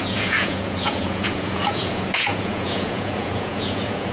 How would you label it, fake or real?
fake